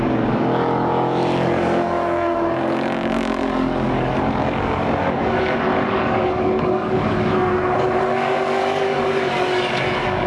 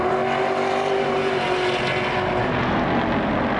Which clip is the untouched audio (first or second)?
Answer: second